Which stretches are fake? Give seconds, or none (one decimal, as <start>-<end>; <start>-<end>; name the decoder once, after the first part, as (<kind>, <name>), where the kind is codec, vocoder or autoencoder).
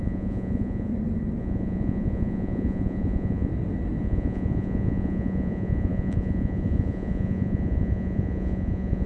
0.0-0.9 (vocoder, Vocos); 1.4-3.5; 4.0-9.1